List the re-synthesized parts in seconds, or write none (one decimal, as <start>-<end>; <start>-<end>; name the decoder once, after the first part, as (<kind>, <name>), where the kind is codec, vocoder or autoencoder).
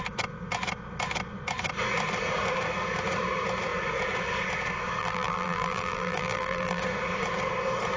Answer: 5.0-6.8 (vocoder, BigVGAN v2)